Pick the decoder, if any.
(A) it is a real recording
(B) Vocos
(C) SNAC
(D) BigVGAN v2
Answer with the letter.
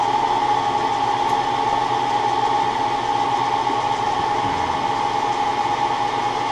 A